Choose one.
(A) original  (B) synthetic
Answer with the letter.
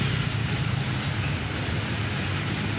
A